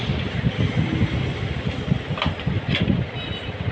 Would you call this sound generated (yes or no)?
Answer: no